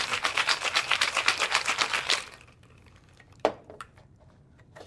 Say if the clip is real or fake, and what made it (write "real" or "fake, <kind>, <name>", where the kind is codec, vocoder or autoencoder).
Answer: fake, vocoder, BigVGAN v2